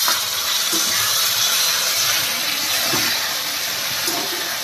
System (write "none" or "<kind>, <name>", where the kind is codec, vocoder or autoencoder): vocoder, BigVGAN v2